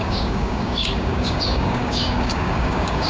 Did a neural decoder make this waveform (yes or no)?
yes